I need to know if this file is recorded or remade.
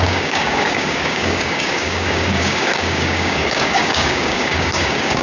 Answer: remade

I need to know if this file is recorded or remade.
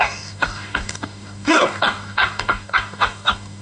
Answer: remade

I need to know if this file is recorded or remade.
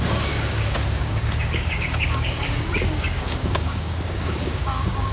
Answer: remade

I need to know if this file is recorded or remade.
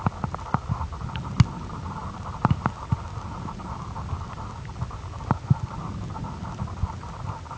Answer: recorded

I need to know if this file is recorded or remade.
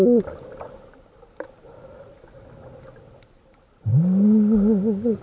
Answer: recorded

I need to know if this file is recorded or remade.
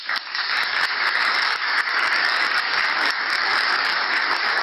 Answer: remade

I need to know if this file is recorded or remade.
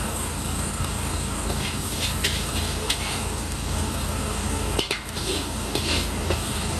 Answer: remade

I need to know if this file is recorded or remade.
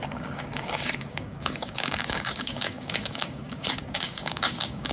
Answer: remade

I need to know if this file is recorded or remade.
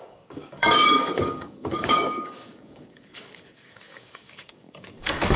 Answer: remade